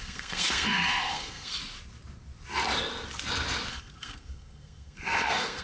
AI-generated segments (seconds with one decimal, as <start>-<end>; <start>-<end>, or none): 0.0-1.6; 3.7-5.6